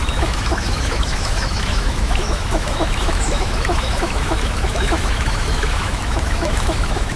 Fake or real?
fake